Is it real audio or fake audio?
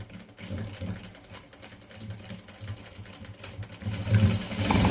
real